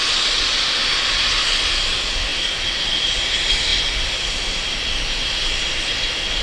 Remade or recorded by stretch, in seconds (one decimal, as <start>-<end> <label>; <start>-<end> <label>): 0.0-3.7 recorded; 3.7-5.7 remade; 5.7-6.4 recorded